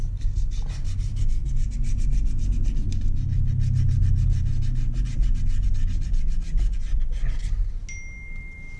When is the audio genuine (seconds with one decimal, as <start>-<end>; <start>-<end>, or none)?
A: 0.0-8.8